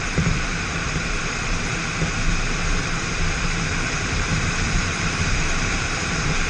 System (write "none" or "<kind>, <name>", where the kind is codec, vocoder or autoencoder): vocoder, BigVGAN v2